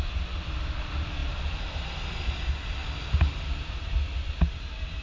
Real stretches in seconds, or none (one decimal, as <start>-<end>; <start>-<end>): 0.0-5.0